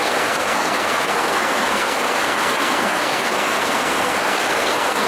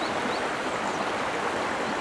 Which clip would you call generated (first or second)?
first